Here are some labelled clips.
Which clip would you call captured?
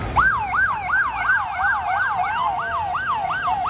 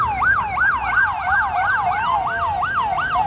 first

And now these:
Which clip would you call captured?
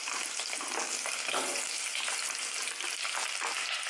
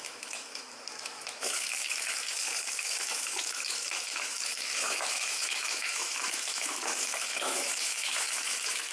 first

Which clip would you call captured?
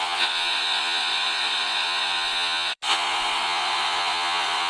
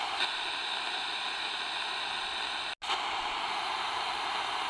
second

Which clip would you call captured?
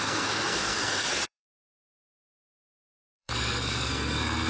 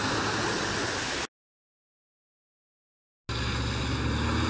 second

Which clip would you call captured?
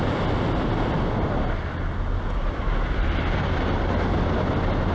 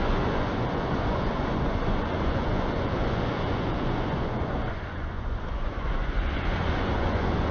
first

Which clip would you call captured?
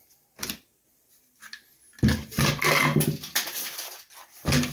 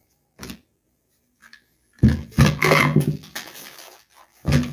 first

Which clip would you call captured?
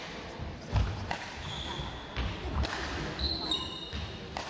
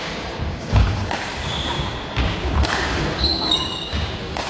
first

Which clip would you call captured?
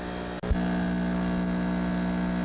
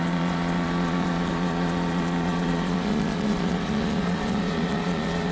first